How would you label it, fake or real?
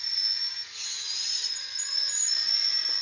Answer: real